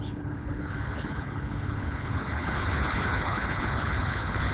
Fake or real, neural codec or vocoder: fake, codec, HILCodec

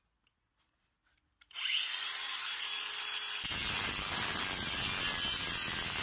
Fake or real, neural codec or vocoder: real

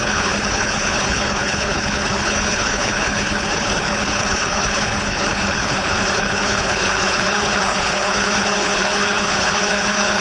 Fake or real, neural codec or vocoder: fake, codec, HILCodec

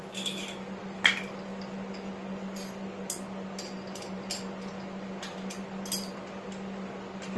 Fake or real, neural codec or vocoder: real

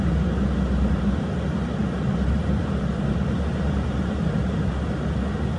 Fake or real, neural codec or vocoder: real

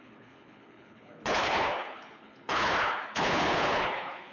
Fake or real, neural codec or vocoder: fake, codec, HILCodec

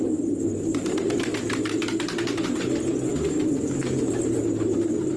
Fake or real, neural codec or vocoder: real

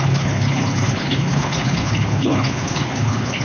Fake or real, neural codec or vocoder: fake, codec, HILCodec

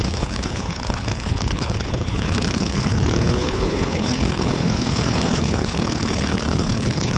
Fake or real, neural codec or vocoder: fake, codec, HILCodec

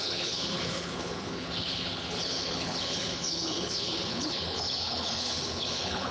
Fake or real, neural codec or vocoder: fake, codec, HILCodec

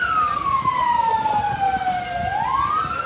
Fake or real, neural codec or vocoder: real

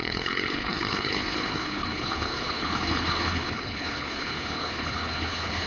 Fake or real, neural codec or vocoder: fake, codec, HILCodec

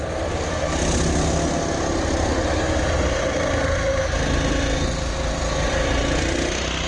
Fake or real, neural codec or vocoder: real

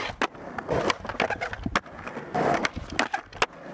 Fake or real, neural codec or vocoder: real